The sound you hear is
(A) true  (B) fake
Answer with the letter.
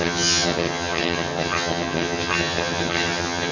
B